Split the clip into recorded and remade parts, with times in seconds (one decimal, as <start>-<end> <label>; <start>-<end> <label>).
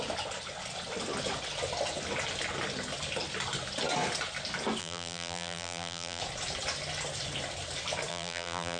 0.0-4.8 recorded; 4.8-6.2 remade; 6.2-8.1 recorded; 8.1-8.8 remade